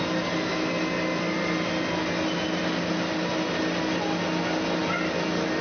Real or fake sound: real